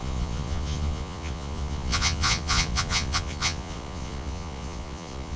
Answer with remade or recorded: remade